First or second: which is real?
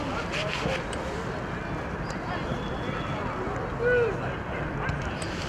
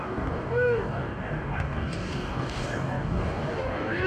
first